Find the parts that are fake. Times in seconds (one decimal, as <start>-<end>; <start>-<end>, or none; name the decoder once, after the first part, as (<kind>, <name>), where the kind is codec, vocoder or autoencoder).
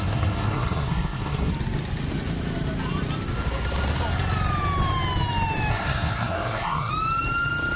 0.0-1.5 (codec, SNAC); 5.7-6.9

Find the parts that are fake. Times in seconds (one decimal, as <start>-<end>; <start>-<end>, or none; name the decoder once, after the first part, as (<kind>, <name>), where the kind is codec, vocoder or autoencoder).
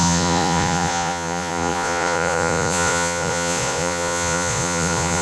0.0-5.2 (vocoder, Vocos)